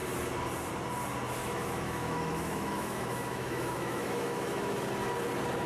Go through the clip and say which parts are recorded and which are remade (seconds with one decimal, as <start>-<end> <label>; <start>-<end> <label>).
0.0-1.4 recorded; 1.4-4.8 remade; 4.8-5.7 recorded